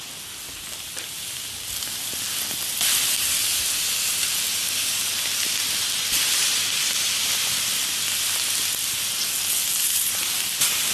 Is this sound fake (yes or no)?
no